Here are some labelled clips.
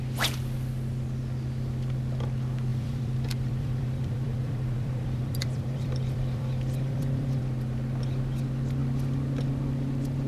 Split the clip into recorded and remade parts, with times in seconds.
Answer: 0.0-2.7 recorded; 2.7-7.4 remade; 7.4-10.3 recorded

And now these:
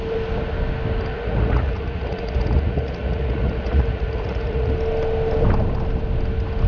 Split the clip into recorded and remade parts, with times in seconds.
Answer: 0.0-1.1 recorded; 1.1-4.7 remade; 4.7-6.7 recorded

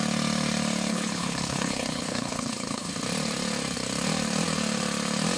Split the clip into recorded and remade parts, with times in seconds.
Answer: 0.0-0.9 recorded; 0.9-2.9 remade; 2.9-5.4 recorded

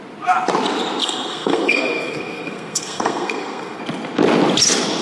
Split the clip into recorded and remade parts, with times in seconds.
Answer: 0.0-1.0 recorded; 1.0-3.8 remade; 3.8-5.0 recorded

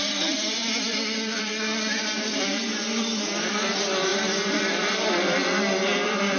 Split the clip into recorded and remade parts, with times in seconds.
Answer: 0.0-6.4 remade

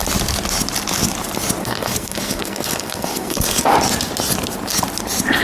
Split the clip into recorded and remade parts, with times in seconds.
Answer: 0.0-1.6 recorded; 1.6-3.7 remade; 3.7-5.4 recorded